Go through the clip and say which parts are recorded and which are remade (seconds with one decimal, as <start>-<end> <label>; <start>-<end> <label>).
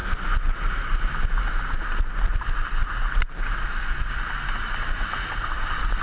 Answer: 0.0-6.0 recorded